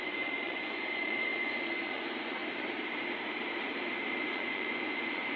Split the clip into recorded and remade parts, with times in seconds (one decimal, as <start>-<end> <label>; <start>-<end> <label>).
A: 0.0-2.4 remade; 2.4-4.3 recorded; 4.3-5.4 remade

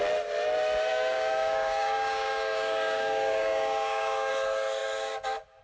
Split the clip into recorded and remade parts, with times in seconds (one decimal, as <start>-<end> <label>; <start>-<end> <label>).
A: 0.0-0.9 recorded; 0.9-4.3 remade; 4.3-5.6 recorded

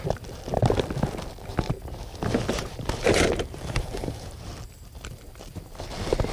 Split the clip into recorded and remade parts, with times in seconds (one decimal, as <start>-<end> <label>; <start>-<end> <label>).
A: 0.0-1.5 recorded; 1.5-4.5 remade; 4.5-6.3 recorded